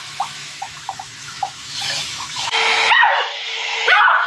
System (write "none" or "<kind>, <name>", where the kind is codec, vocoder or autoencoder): autoencoder, DAC-VAE